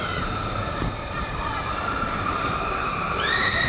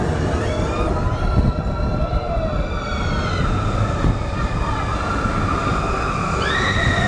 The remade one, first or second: first